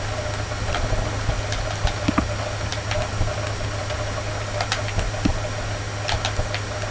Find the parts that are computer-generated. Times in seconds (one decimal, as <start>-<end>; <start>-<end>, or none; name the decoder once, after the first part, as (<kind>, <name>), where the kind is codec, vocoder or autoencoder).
none

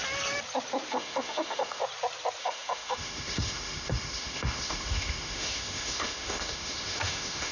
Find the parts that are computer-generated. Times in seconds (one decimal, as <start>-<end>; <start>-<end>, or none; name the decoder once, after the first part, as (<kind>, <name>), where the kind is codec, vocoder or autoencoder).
0.9-1.8 (autoencoder, DAC-VAE); 2.4-7.5

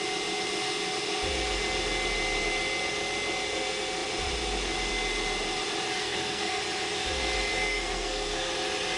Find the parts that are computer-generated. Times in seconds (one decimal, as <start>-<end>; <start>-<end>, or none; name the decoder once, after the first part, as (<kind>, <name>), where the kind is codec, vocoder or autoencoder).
6.0-6.6 (codec, SNAC); 7.5-8.5

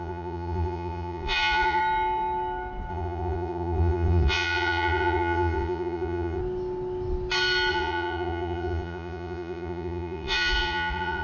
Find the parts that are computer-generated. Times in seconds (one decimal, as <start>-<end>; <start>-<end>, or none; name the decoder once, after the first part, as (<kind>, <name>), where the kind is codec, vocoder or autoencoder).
0.0-1.8 (vocoder, Vocos); 2.9-6.4; 7.7-11.2